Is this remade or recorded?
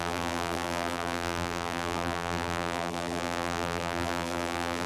remade